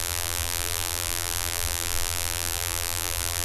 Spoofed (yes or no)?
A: yes